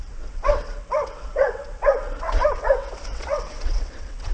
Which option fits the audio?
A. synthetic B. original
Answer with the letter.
A